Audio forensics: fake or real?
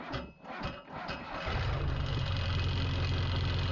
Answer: real